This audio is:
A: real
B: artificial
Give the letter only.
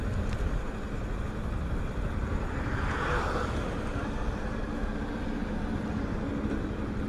A